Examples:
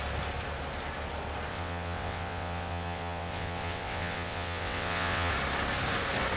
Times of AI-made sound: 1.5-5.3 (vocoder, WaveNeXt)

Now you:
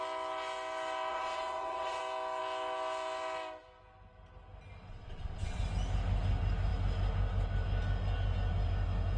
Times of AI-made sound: 1.1-2.0 (vocoder, WaveNeXt); 4.9-5.6

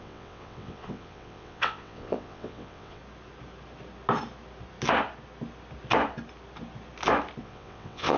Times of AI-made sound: 0.0-3.0 (vocoder, WaveNeXt); 7.4-8.2

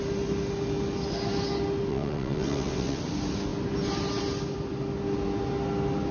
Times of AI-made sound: 1.9-3.0 (vocoder, WaveNeXt)

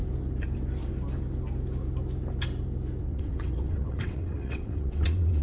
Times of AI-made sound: 3.0-5.4 (vocoder, WaveNeXt)

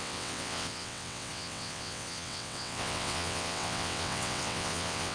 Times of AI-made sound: 0.0-5.1 (vocoder, WaveNeXt)

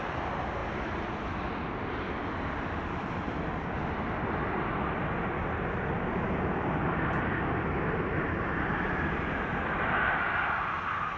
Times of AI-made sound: none

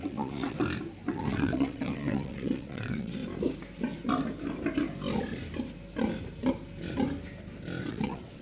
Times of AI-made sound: 0.0-0.6 (vocoder, WaveNeXt); 1.1-3.2; 7.9-8.4